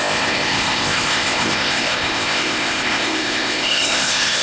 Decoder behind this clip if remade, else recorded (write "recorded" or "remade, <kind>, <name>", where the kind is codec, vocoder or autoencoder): remade, codec, ZipCodec